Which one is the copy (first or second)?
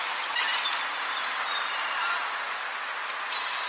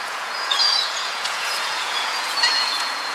second